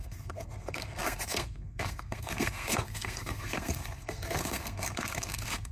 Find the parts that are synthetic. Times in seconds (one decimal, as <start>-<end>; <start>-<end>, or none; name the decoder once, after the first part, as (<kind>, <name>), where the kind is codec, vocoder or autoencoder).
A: 0.0-5.7 (codec, SNAC)